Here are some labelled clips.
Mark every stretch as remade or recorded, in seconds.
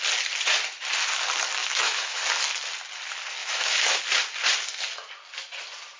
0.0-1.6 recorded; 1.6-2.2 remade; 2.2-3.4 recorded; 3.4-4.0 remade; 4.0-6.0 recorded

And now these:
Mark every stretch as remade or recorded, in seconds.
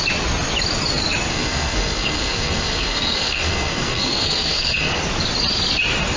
0.0-1.3 recorded; 1.3-5.0 remade; 5.0-6.2 recorded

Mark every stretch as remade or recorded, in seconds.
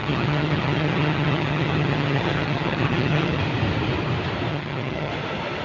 0.0-3.4 remade; 3.4-4.5 recorded; 4.5-5.1 remade; 5.1-5.6 recorded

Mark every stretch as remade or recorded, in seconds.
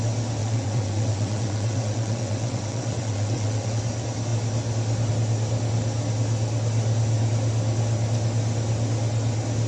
0.0-0.4 recorded; 0.4-3.8 remade; 3.8-9.7 recorded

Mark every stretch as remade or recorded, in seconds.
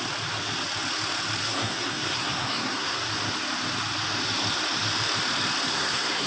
0.0-1.4 recorded; 1.4-3.1 remade; 3.1-5.7 recorded; 5.7-6.3 remade